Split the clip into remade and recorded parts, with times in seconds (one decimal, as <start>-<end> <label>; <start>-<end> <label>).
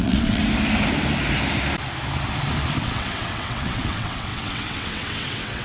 0.0-0.4 remade; 0.4-2.8 recorded; 2.8-5.6 remade